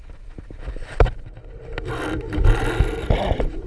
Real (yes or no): yes